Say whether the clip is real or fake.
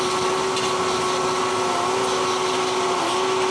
real